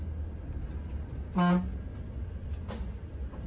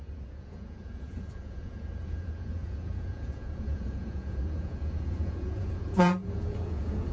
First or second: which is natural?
first